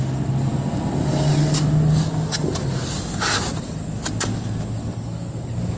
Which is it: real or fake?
real